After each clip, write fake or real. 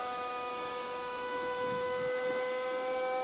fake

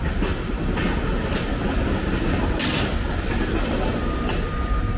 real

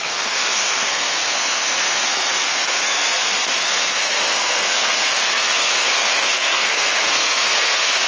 fake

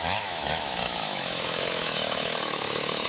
fake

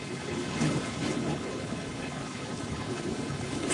fake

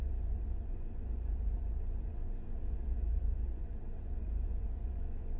fake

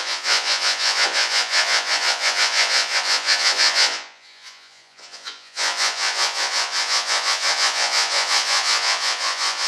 fake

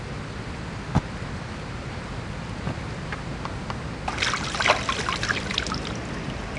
real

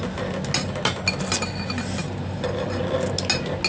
real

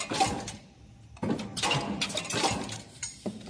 real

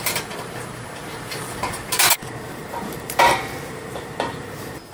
fake